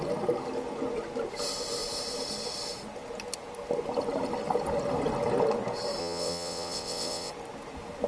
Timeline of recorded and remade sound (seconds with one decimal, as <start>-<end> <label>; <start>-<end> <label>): 0.0-6.0 recorded; 6.0-7.3 remade; 7.3-8.1 recorded